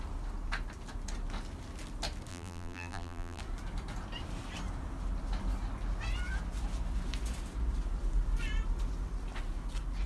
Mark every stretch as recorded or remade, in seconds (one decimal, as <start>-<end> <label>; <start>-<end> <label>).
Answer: 0.0-2.3 recorded; 2.3-3.4 remade; 3.4-10.1 recorded